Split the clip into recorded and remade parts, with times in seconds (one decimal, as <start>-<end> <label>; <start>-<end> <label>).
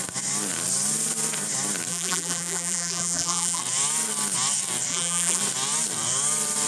0.0-1.9 recorded; 1.9-3.6 remade; 3.6-4.9 recorded; 4.9-5.4 remade; 5.4-6.7 recorded